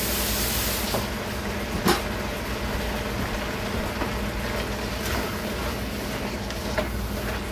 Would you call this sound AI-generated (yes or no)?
no